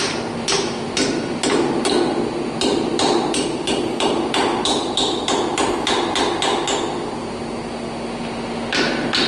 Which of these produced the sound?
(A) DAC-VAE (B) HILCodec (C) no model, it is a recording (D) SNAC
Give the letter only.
C